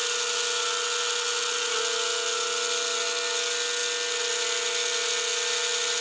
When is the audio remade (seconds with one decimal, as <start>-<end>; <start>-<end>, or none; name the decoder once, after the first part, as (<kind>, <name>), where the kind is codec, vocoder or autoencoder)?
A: none